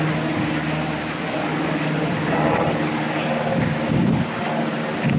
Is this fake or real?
real